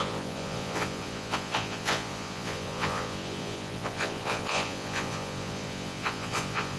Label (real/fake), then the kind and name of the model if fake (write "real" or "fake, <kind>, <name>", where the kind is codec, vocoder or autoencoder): fake, vocoder, Vocos